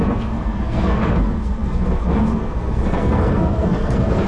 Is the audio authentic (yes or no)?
no